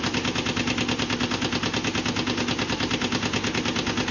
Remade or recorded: recorded